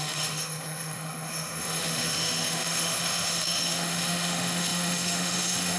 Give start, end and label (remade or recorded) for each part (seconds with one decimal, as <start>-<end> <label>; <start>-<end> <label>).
0.0-5.8 remade